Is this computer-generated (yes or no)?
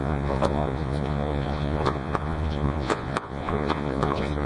yes